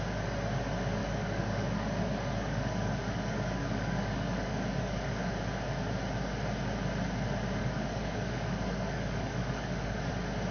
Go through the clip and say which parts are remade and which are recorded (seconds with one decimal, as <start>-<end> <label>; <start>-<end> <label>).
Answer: 0.0-1.0 recorded; 1.0-5.3 remade; 5.3-7.6 recorded; 7.6-10.1 remade; 10.1-10.5 recorded